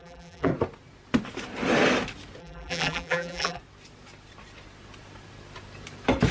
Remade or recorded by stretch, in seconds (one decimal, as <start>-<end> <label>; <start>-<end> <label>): 0.0-0.5 remade; 0.5-2.4 recorded; 2.4-3.6 remade; 3.6-6.3 recorded